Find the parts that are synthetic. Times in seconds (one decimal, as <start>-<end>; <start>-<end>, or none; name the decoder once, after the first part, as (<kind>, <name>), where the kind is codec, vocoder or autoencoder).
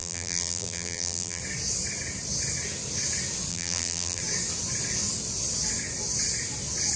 0.0-1.4 (vocoder, BigVGAN v2); 3.5-4.2